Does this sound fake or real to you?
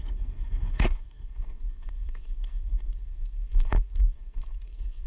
fake